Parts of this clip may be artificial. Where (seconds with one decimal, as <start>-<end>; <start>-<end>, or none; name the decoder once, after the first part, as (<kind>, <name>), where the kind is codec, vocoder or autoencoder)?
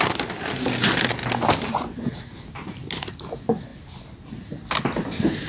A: none